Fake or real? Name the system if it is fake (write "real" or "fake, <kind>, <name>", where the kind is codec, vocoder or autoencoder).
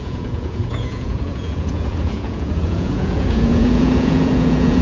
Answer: fake, vocoder, Vocos